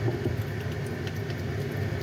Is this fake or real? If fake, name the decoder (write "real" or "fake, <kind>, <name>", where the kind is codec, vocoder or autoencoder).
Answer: real